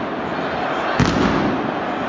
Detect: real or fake real